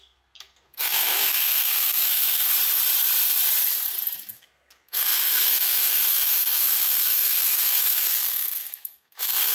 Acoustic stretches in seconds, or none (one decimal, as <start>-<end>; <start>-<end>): 2.5-4.3